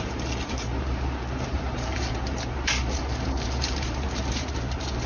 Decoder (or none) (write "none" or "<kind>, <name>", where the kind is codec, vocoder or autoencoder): vocoder, BigVGAN v2